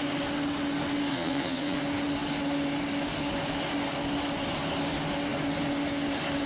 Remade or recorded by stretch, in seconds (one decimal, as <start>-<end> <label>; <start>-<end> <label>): 0.0-1.1 recorded; 1.1-1.8 remade; 1.8-6.5 recorded